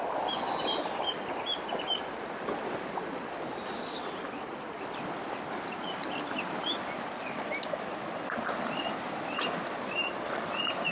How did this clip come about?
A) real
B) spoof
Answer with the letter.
A